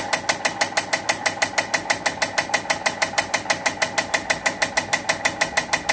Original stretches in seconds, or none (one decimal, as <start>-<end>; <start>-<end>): 0.0-5.9